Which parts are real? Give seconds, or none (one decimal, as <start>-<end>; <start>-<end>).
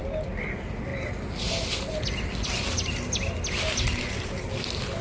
0.0-5.0